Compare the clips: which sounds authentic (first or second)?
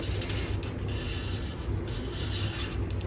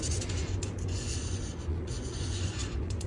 first